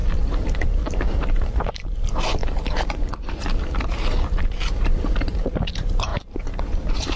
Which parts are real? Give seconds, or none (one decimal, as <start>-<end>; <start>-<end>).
none